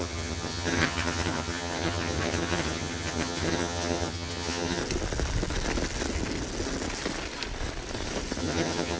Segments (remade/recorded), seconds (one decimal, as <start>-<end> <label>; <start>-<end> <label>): 0.0-4.8 remade; 4.8-8.4 recorded; 8.4-9.0 remade